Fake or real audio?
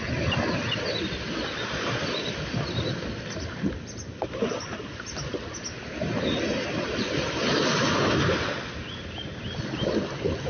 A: real